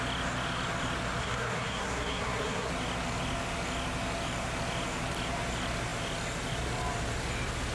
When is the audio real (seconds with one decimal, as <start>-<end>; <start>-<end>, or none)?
0.0-1.2; 2.7-7.7